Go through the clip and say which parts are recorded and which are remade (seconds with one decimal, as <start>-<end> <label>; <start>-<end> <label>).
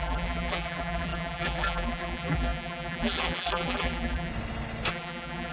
0.0-4.3 remade; 4.3-4.9 recorded; 4.9-5.5 remade